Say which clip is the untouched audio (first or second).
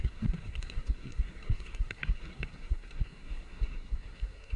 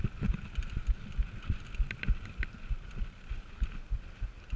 second